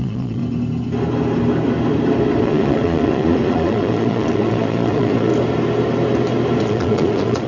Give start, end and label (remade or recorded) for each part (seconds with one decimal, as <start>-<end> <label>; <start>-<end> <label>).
0.0-0.4 remade; 0.4-2.4 recorded; 2.4-5.3 remade; 5.3-6.6 recorded; 6.6-7.5 remade